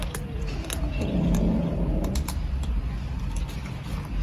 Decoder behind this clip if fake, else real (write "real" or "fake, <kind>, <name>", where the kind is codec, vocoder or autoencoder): real